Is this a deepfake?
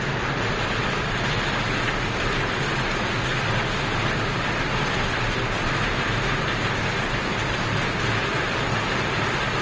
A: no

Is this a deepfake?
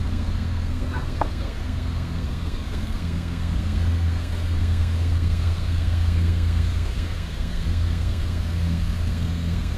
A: yes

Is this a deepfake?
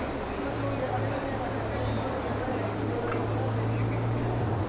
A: no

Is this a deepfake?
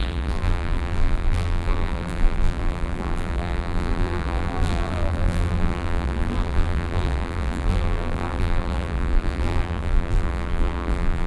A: yes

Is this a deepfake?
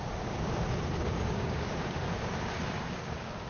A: yes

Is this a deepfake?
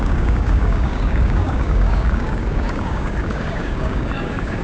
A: yes